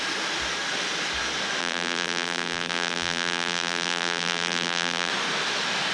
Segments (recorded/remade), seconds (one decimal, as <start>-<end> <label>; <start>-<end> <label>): 0.0-1.6 recorded; 1.6-5.1 remade; 5.1-5.9 recorded

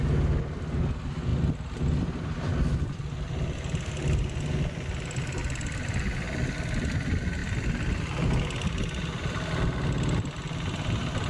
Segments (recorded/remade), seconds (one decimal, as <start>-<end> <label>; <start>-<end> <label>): 0.0-1.3 recorded; 1.3-2.5 remade; 2.5-5.4 recorded; 5.4-6.0 remade; 6.0-7.4 recorded; 7.4-8.2 remade; 8.2-11.3 recorded

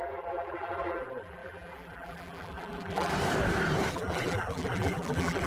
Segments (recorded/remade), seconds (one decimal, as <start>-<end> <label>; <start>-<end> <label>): 0.0-3.1 remade; 3.1-3.9 recorded; 3.9-5.5 remade

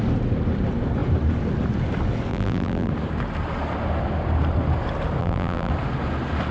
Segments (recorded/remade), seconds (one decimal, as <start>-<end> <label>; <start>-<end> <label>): 0.0-2.3 recorded; 2.3-2.9 remade; 2.9-5.2 recorded; 5.2-5.7 remade; 5.7-6.5 recorded

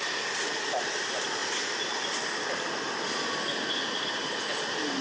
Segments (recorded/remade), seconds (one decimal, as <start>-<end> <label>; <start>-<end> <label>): 0.0-5.0 recorded

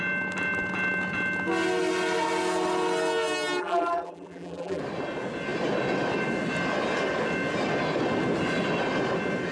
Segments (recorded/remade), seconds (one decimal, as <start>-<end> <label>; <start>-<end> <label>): 0.0-3.6 recorded; 3.6-4.8 remade; 4.8-9.5 recorded